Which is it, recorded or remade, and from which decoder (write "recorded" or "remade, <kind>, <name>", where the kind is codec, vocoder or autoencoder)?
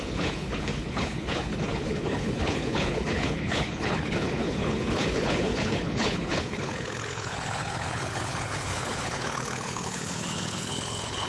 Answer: remade, codec, HILCodec